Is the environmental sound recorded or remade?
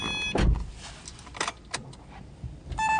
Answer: recorded